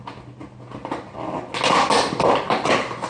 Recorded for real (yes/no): yes